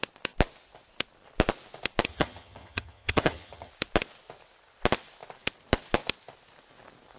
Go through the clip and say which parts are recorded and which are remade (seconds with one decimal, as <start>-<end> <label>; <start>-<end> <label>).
0.0-2.1 recorded; 2.1-3.7 remade; 3.7-7.2 recorded